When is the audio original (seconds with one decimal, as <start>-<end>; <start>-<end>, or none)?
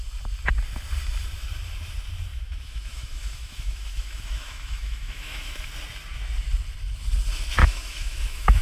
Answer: 0.0-2.3; 5.7-7.6